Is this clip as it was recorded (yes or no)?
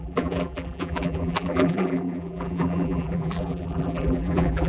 no